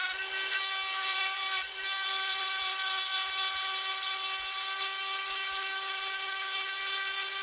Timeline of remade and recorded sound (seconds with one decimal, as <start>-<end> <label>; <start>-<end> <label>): 0.0-1.1 recorded; 1.1-2.8 remade; 2.8-7.4 recorded